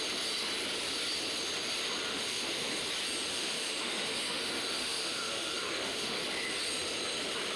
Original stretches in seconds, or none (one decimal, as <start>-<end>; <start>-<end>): 0.0-2.1; 2.8-3.3; 6.2-7.6